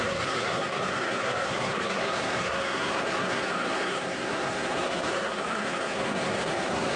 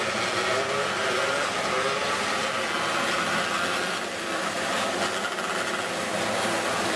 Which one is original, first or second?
second